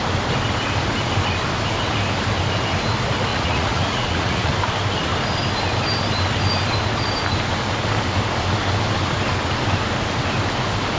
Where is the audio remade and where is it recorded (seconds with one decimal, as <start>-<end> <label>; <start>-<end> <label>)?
0.0-3.3 recorded; 3.3-4.5 remade; 4.5-11.0 recorded

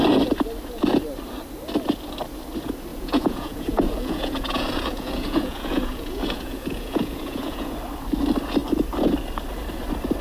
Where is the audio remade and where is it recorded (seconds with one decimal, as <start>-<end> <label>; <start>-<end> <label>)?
0.0-2.9 recorded; 2.9-7.7 remade; 7.7-10.2 recorded

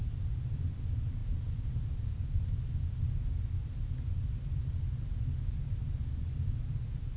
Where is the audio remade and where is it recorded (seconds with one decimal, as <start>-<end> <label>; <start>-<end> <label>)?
0.0-7.2 recorded

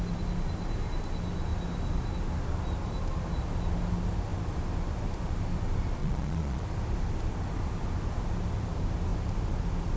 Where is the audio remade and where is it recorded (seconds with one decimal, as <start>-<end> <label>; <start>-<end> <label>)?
0.0-6.0 recorded; 6.0-6.6 remade; 6.6-10.0 recorded

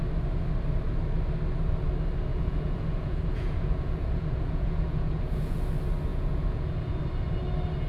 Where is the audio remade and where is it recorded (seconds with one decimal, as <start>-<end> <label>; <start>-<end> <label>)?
0.0-2.3 recorded; 2.3-5.6 remade; 5.6-6.1 recorded; 6.1-7.0 remade; 7.0-7.9 recorded

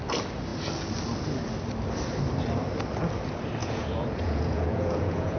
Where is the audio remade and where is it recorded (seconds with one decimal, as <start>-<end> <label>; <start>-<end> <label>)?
0.0-3.6 recorded; 3.6-5.4 remade

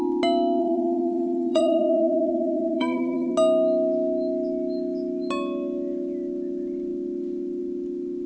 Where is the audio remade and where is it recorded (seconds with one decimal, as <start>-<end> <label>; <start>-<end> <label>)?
0.0-0.6 recorded; 0.6-3.3 remade; 3.3-8.3 recorded

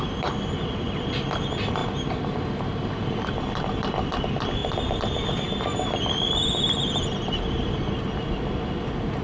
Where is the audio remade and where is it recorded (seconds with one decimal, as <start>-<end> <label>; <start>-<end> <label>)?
0.0-9.2 recorded